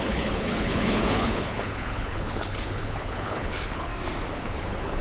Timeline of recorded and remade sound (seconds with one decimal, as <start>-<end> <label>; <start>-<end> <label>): 0.0-3.9 remade; 3.9-4.4 recorded; 4.4-5.0 remade

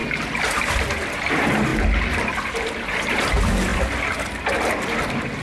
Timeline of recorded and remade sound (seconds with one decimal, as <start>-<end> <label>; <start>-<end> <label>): 0.0-5.4 recorded

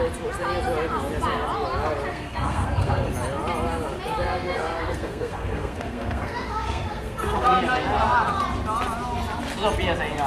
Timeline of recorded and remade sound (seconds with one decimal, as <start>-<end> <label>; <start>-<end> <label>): 0.0-2.1 recorded; 2.1-3.1 remade; 3.1-4.2 recorded; 4.2-7.6 remade; 7.6-10.3 recorded